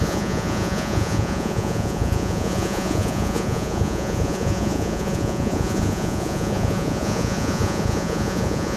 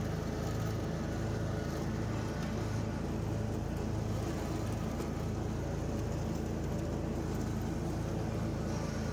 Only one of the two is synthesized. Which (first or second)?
first